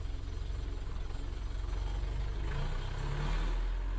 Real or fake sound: real